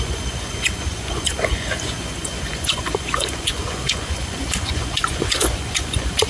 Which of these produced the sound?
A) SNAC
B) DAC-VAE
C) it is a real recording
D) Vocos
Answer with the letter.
D